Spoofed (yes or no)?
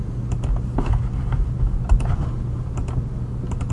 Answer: no